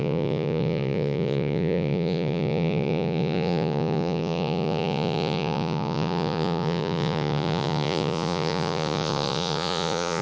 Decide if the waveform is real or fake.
fake